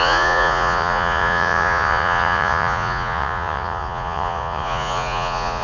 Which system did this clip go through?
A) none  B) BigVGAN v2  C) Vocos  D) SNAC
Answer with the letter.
C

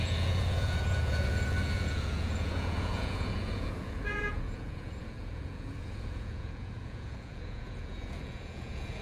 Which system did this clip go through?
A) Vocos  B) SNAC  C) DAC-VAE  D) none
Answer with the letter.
A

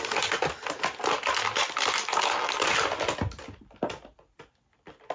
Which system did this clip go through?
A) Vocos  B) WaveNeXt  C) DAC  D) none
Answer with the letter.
D